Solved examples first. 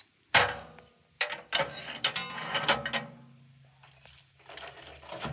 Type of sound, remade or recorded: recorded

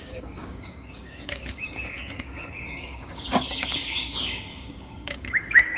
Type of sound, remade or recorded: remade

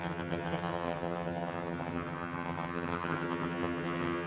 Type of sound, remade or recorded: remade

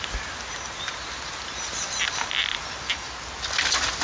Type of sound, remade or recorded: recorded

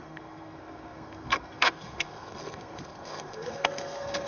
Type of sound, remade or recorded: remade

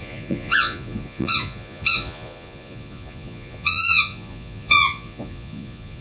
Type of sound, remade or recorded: remade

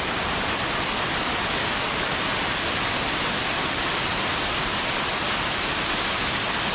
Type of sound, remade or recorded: recorded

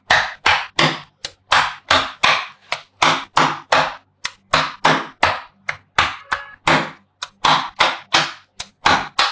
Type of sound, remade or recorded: recorded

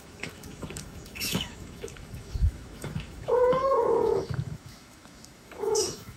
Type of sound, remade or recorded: remade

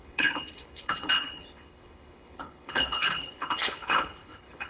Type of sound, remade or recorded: remade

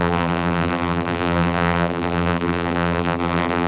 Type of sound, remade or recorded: remade